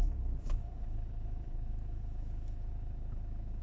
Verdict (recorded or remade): remade